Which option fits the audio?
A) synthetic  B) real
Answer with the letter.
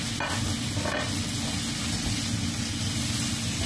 B